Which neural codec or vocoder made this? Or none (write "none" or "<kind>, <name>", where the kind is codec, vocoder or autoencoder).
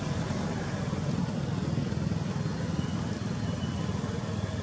none